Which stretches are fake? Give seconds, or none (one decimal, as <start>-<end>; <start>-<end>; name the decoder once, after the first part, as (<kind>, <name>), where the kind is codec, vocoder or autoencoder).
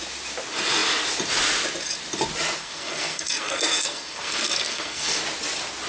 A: 2.6-5.2 (codec, SNAC)